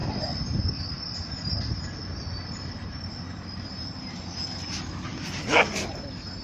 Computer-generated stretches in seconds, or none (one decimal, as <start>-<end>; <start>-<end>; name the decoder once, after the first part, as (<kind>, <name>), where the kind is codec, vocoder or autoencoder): 0.0-3.8 (vocoder, BigVGAN v2)